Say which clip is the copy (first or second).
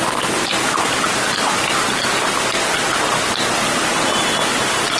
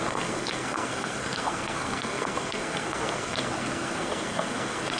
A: second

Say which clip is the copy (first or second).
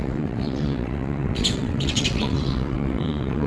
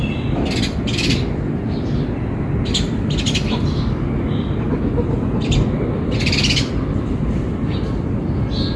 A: first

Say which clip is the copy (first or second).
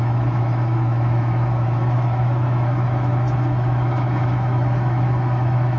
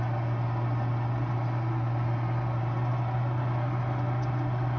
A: first